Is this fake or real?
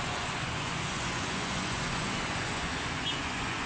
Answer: fake